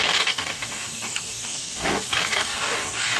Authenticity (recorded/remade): remade